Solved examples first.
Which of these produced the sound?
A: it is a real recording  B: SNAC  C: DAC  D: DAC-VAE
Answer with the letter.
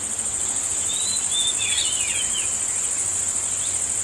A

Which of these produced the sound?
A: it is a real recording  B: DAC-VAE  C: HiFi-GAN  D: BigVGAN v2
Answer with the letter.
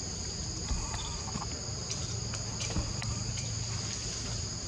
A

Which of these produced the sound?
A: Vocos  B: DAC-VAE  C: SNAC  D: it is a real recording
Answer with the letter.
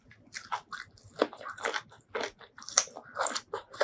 D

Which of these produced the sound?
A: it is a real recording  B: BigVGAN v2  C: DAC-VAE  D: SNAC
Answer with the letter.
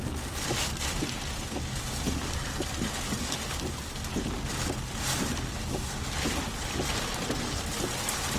A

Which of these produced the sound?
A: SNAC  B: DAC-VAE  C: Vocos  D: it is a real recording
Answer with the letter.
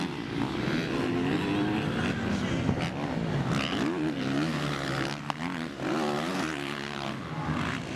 D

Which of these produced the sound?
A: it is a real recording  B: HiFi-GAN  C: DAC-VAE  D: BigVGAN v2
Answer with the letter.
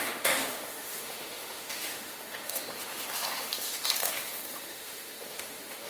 C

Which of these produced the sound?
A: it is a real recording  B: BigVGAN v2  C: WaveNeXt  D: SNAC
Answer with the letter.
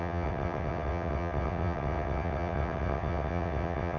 C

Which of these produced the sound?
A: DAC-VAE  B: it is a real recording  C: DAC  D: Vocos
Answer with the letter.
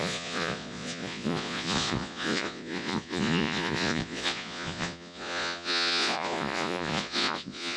D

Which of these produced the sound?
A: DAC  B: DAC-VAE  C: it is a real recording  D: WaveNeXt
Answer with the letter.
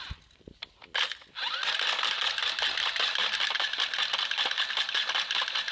C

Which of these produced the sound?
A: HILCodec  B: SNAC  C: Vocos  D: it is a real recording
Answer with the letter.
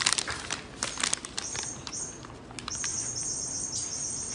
D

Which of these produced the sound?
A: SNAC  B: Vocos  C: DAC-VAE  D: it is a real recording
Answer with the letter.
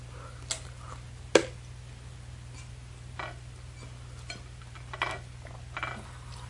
D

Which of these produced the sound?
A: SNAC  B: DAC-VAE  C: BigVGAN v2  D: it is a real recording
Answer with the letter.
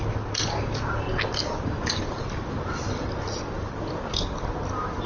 D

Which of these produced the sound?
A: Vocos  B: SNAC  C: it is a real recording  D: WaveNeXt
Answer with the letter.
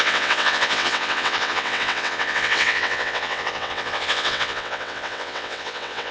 D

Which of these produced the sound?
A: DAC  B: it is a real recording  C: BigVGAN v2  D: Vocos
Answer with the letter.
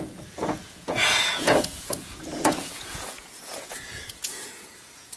D